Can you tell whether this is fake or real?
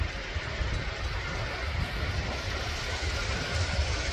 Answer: real